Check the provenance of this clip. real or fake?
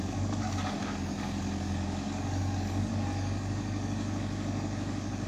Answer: fake